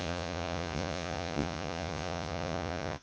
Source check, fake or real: fake